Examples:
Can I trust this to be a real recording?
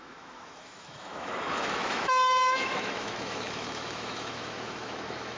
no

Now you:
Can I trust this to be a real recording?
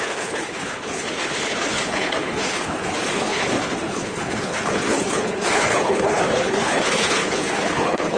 no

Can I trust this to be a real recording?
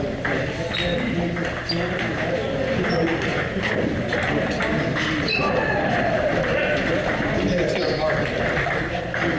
yes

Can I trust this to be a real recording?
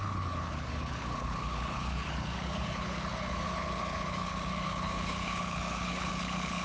no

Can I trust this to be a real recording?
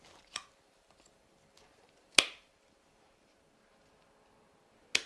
yes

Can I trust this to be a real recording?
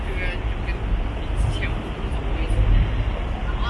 yes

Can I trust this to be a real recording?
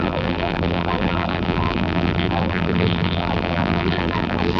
no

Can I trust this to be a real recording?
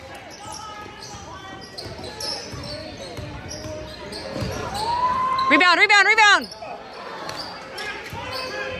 yes